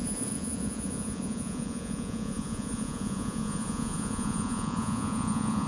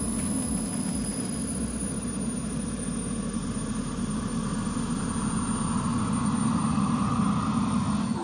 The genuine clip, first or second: second